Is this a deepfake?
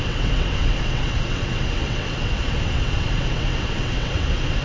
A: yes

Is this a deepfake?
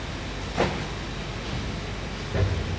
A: no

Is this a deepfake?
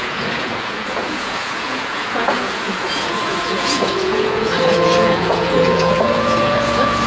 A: yes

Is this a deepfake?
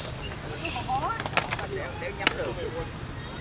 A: no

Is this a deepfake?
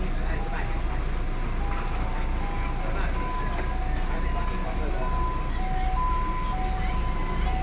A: no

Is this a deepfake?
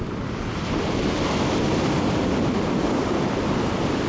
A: no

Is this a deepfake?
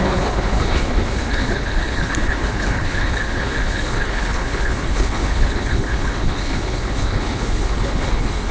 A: yes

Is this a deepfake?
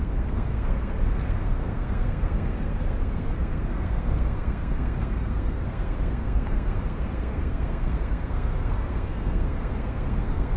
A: yes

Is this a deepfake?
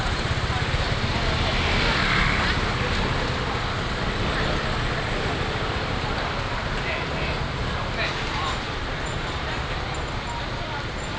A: no